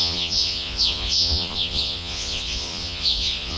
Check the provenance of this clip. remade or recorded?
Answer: remade